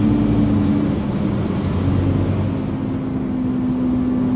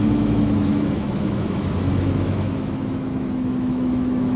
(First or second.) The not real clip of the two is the second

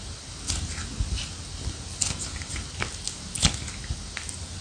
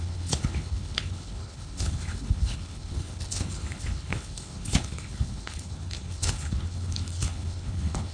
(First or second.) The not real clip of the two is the second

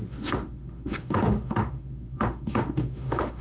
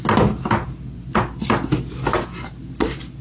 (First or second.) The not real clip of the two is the first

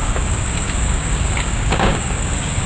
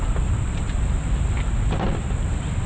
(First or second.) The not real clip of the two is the first